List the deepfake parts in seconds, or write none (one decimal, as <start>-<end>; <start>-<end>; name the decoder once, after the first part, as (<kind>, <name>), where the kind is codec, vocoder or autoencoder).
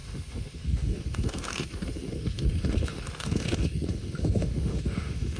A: 0.0-5.4 (autoencoder, DAC-VAE)